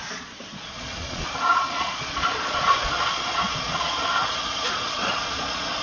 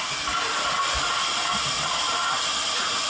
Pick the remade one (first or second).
first